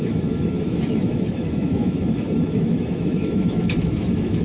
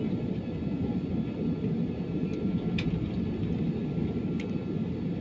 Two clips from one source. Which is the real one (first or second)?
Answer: second